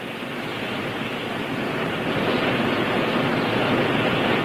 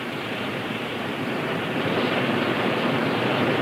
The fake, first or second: second